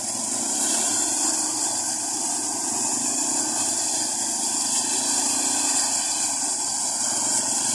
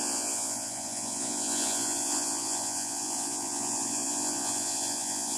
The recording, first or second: first